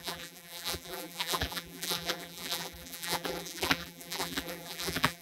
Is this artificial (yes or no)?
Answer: yes